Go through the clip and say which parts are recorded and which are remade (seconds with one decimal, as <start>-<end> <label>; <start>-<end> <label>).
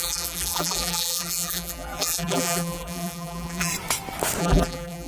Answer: 0.0-3.7 remade; 3.7-4.4 recorded; 4.4-5.1 remade